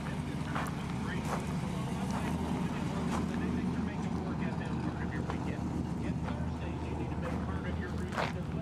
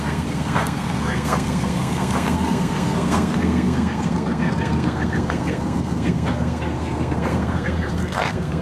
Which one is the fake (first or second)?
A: second